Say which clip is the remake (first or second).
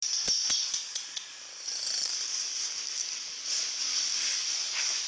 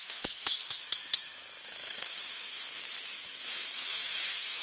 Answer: second